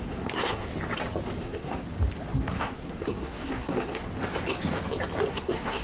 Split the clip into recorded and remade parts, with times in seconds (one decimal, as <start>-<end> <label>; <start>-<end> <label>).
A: 0.0-0.7 remade; 0.7-1.4 recorded; 1.4-1.8 remade; 1.8-2.4 recorded; 2.4-4.1 remade; 4.1-5.3 recorded; 5.3-5.8 remade